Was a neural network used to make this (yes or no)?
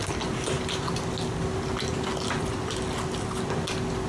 no